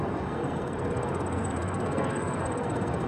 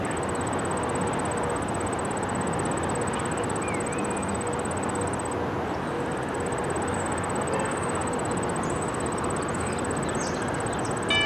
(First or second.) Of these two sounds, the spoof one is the first